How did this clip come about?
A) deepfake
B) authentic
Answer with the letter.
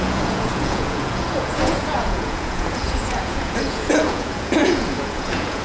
A